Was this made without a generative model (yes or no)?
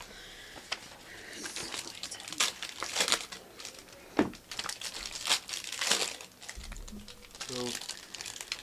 yes